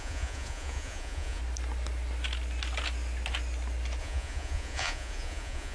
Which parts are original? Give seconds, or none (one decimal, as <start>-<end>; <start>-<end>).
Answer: 1.4-4.0